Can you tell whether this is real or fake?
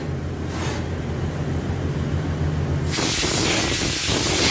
real